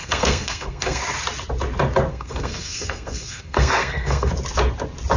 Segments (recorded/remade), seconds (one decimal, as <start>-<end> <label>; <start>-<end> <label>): 0.0-1.0 remade; 1.0-2.1 recorded; 2.1-4.3 remade; 4.3-5.2 recorded